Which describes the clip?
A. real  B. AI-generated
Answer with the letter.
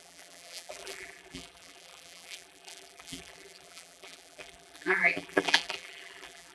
B